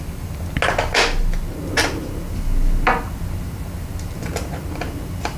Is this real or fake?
real